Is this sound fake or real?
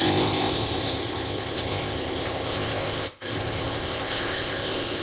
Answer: fake